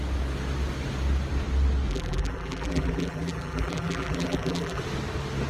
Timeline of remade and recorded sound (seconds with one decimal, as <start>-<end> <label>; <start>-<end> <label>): 0.0-1.9 recorded; 1.9-4.8 remade; 4.8-5.5 recorded